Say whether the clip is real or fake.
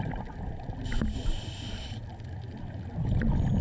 real